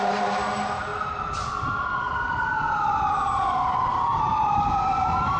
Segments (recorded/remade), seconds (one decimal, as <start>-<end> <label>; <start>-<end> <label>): 0.0-5.4 recorded

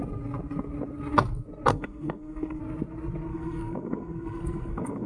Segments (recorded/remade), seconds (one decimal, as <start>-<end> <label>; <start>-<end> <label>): 0.0-1.7 recorded; 1.7-2.6 remade; 2.6-3.3 recorded; 3.3-5.1 remade

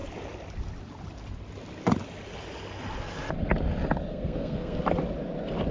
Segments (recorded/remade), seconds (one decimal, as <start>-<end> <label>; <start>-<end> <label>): 0.0-4.1 recorded; 4.1-4.8 remade; 4.8-5.7 recorded

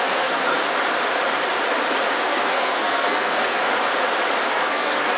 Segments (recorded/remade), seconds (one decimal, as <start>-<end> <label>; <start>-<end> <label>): 0.0-0.6 remade; 0.6-2.2 recorded; 2.2-3.7 remade; 3.7-4.5 recorded; 4.5-5.2 remade

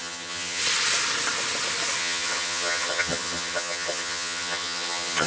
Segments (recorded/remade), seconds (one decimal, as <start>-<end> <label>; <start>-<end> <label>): 0.0-0.6 remade; 0.6-2.0 recorded; 2.0-5.3 remade

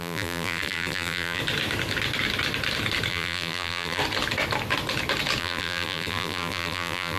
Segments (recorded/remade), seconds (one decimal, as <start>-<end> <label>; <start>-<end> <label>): 0.0-1.4 remade; 1.4-3.1 recorded; 3.1-4.0 remade; 4.0-5.4 recorded; 5.4-7.2 remade

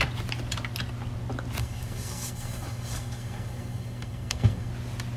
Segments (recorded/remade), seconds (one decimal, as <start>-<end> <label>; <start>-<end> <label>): 0.0-1.6 recorded; 1.6-4.7 remade; 4.7-5.2 recorded